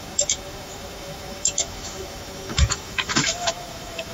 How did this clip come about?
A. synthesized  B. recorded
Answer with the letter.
A